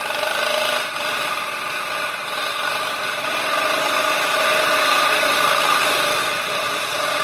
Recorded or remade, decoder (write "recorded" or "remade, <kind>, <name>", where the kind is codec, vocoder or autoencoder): recorded